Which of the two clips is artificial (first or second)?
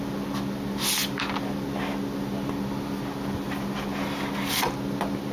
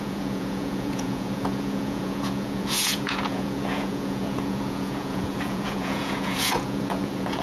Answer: second